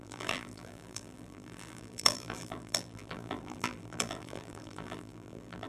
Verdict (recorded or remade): remade